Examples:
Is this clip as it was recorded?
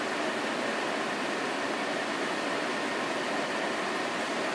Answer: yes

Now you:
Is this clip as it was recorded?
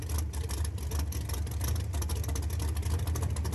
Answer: yes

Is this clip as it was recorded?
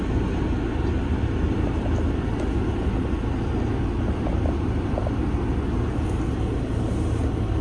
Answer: yes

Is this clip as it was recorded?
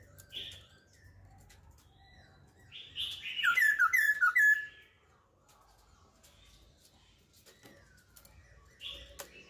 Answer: yes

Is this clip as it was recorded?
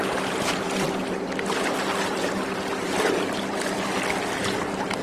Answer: yes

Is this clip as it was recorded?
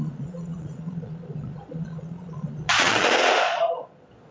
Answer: no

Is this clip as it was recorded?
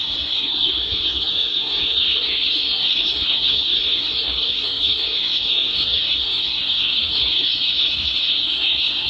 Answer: no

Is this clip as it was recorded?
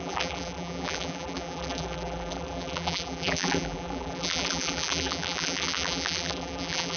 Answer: no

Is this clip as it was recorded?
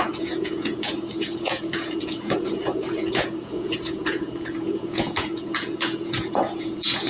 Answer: no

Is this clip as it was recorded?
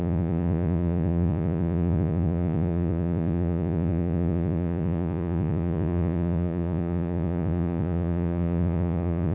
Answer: no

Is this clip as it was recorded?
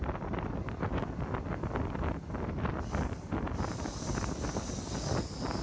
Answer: yes